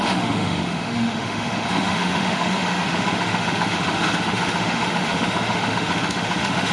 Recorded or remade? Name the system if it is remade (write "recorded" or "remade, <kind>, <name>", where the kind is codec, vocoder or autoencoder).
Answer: remade, autoencoder, DAC-VAE